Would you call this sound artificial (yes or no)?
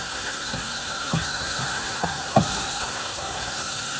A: yes